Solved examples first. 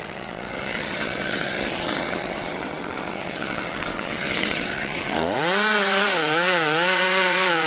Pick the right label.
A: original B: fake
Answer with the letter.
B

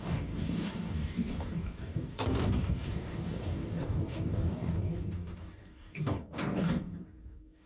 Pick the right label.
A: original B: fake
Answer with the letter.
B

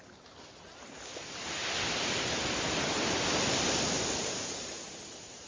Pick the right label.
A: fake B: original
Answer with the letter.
B